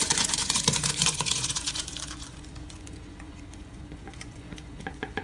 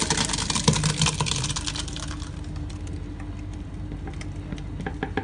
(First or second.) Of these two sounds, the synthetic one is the first